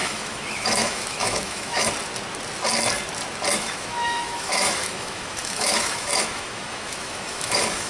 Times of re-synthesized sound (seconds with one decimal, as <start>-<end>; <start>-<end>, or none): 0.0-1.9; 3.5-7.9